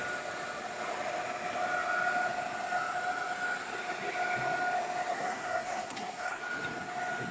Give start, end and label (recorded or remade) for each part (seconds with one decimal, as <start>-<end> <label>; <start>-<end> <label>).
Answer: 0.0-5.1 recorded; 5.1-6.4 remade; 6.4-7.3 recorded